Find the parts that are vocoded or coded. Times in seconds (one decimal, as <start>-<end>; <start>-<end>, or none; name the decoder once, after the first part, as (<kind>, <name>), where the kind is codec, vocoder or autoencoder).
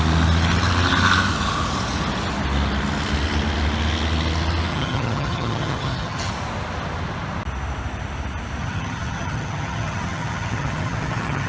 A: 4.7-6.3 (vocoder, HiFi-GAN); 8.6-11.5